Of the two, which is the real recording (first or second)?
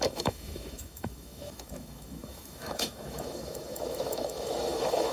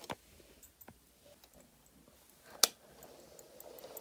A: second